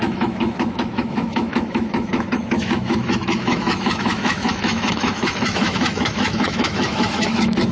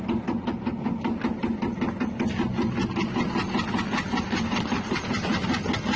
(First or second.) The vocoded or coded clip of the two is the first